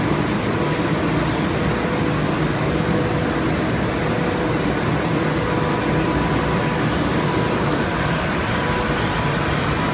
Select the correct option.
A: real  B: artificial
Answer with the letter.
A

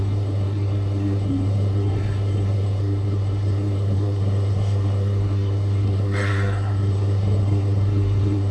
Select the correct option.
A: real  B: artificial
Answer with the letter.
B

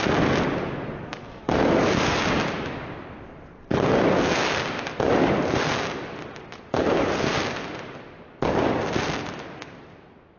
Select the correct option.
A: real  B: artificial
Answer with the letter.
A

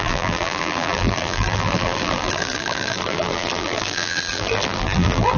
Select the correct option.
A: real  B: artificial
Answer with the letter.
B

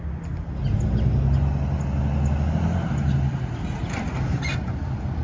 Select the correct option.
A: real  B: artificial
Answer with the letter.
A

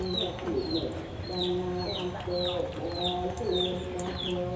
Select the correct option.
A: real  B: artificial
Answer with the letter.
A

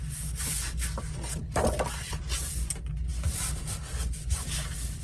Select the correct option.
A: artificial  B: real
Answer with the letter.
B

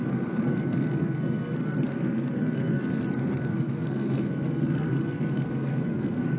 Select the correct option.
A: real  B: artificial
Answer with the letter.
B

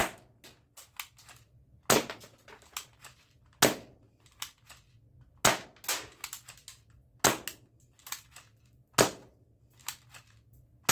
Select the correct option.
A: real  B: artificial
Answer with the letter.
A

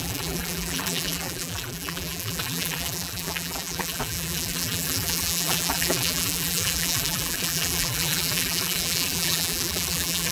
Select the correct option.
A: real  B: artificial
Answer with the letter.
B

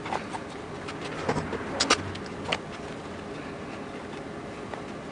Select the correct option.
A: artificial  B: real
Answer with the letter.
B